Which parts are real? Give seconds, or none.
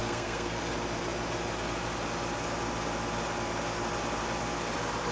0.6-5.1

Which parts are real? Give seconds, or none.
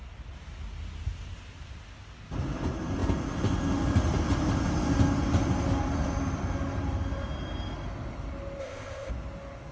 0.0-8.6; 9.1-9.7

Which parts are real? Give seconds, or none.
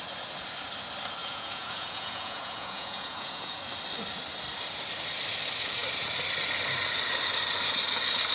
0.0-1.2; 3.6-8.3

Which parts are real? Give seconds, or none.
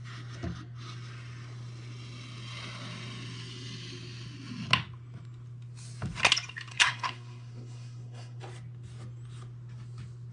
0.0-6.7; 8.4-10.3